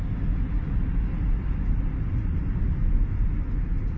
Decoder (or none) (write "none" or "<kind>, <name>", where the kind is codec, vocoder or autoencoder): none